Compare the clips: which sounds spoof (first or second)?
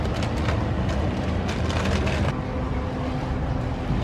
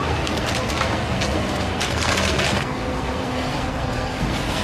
second